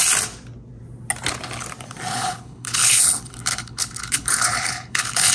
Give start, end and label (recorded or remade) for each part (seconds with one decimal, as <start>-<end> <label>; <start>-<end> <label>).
0.0-2.1 recorded; 2.1-5.3 remade